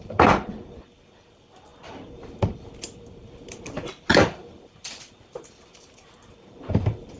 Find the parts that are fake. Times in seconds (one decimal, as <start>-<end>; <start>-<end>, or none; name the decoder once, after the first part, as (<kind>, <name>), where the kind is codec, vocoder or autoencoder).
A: none